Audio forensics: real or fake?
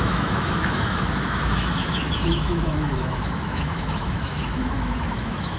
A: fake